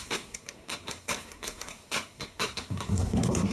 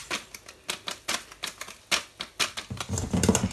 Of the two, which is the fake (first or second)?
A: first